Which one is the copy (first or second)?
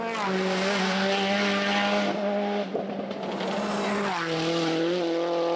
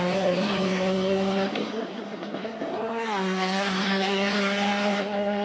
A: second